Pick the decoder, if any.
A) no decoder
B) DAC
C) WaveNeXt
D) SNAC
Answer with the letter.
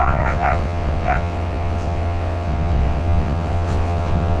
C